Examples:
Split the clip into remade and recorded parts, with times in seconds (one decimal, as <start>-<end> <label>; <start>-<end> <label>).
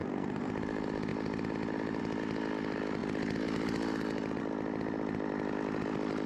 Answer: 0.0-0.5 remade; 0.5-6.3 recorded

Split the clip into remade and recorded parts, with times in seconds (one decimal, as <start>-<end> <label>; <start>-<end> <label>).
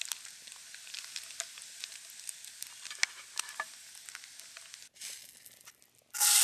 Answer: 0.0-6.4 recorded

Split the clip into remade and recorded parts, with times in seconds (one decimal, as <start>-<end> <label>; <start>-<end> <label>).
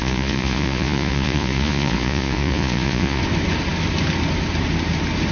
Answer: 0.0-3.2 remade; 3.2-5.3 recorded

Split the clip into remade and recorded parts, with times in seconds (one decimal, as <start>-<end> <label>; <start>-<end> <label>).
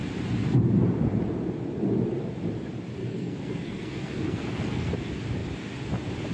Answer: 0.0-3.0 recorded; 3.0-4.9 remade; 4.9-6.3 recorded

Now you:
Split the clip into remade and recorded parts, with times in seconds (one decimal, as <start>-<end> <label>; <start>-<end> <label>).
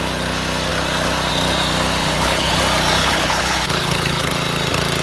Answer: 0.0-2.0 recorded; 2.0-2.6 remade; 2.6-3.0 recorded; 3.0-4.3 remade; 4.3-5.0 recorded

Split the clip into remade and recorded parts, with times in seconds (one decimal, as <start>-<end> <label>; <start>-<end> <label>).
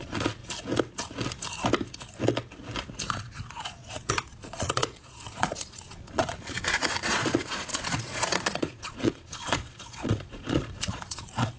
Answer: 0.0-0.4 remade; 0.4-3.1 recorded; 3.1-11.6 remade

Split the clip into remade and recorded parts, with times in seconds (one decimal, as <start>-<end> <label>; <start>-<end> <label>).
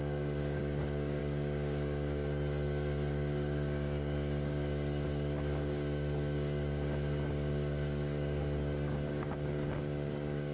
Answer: 0.0-10.5 remade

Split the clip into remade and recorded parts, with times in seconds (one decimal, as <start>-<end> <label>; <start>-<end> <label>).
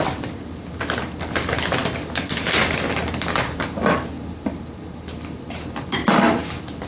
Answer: 0.0-1.8 remade; 1.8-2.6 recorded; 2.6-6.9 remade